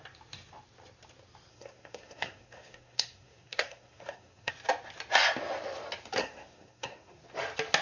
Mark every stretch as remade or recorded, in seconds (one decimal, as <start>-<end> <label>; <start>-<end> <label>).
0.0-1.5 recorded; 1.5-4.5 remade; 4.5-6.2 recorded; 6.2-7.2 remade; 7.2-7.8 recorded